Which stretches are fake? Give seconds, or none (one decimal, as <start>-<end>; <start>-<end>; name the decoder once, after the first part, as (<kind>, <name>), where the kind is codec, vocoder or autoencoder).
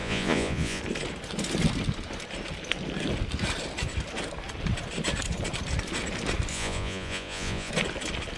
0.0-0.8 (vocoder, Vocos); 6.5-7.7